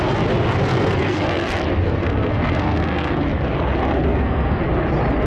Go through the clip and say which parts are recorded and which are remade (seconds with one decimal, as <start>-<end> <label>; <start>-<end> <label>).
0.0-0.7 recorded; 0.7-1.5 remade; 1.5-2.0 recorded; 2.0-3.1 remade; 3.1-4.1 recorded; 4.1-4.6 remade; 4.6-5.3 recorded